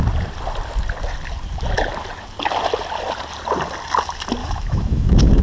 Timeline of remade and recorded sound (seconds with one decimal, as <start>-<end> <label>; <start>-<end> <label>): 0.0-4.4 recorded; 4.4-5.4 remade